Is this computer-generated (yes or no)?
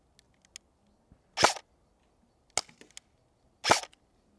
no